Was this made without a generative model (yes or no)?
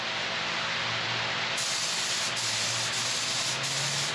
yes